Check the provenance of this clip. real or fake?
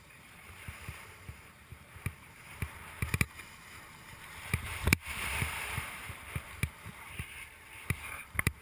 fake